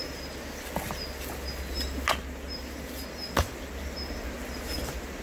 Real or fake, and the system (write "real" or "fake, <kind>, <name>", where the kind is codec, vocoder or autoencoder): real